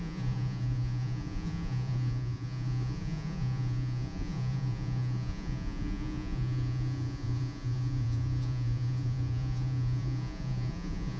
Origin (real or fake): fake